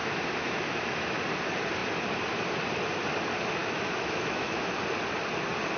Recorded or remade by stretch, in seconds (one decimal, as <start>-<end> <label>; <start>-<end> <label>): 0.0-1.2 remade; 1.2-3.6 recorded; 3.6-4.7 remade; 4.7-5.8 recorded